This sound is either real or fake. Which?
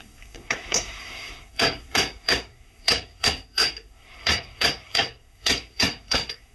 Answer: fake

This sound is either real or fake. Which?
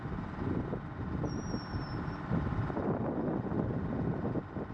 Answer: real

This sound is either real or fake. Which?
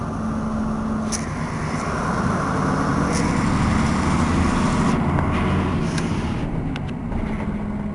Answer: real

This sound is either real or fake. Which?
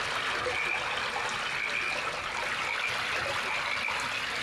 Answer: real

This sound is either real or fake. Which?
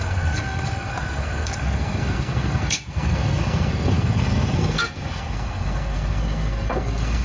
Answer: fake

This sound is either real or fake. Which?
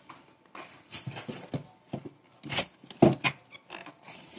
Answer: real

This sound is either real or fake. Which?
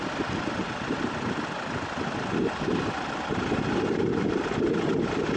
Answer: real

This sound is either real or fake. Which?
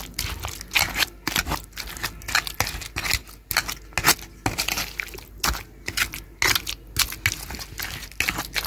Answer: real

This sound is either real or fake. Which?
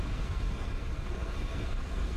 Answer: fake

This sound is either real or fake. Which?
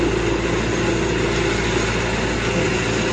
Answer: real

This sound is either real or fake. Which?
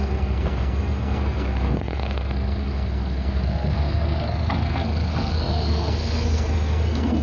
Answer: fake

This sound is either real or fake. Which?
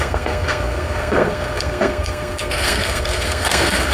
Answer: fake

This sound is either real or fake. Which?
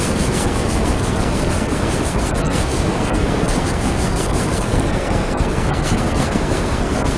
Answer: fake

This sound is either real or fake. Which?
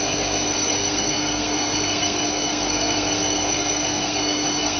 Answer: fake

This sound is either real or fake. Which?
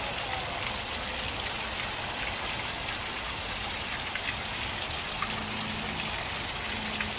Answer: real